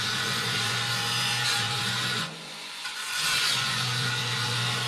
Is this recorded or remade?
remade